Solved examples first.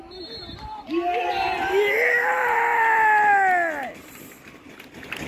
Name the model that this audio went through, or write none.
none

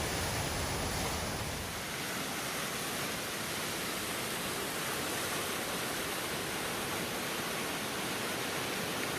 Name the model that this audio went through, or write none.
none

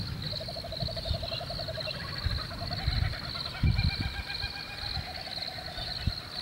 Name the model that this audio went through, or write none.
none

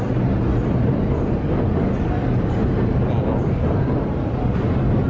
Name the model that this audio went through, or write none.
none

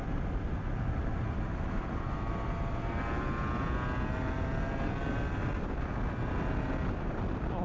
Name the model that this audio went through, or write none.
none